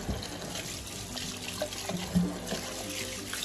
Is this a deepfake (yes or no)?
no